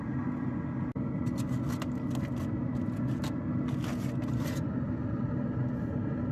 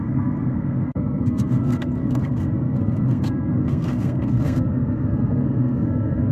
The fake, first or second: second